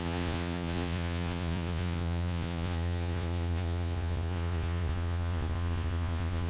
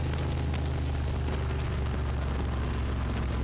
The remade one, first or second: first